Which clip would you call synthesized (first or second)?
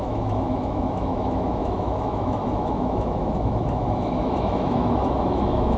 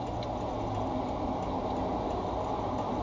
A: first